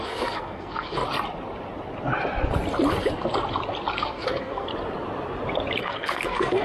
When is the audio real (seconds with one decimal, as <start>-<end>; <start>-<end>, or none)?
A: 1.0-4.0; 4.7-5.8